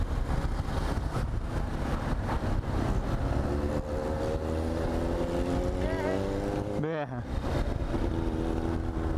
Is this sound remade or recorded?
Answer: recorded